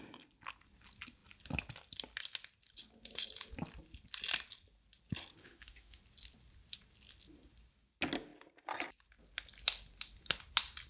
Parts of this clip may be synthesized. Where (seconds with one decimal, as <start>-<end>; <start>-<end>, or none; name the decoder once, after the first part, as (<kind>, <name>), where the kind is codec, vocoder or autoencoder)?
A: 5.4-6.0 (autoencoder, DAC-VAE)

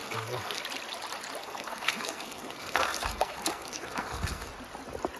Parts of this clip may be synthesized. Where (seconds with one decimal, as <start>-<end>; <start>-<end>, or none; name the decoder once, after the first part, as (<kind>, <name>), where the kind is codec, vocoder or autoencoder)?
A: 0.0-0.6 (codec, SNAC); 1.4-4.5

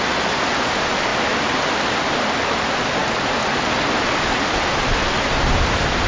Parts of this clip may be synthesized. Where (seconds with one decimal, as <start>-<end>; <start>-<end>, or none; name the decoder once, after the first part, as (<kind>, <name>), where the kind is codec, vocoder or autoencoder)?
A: none

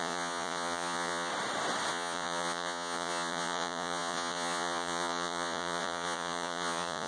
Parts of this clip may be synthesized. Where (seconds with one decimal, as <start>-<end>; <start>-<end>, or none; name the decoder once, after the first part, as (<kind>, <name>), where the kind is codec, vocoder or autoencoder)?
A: 0.0-1.3 (vocoder, Vocos); 1.9-7.1

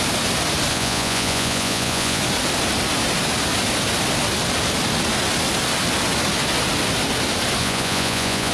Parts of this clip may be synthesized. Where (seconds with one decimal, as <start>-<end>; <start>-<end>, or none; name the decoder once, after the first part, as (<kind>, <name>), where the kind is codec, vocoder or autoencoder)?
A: 0.7-2.2 (vocoder, Vocos); 7.6-8.5

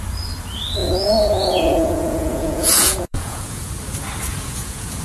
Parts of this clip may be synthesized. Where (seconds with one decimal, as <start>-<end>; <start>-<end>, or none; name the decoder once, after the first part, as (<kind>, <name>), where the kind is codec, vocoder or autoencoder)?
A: 0.8-3.7 (vocoder, Vocos); 4.3-5.0